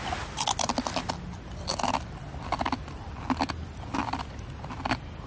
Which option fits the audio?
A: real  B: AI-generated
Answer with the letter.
A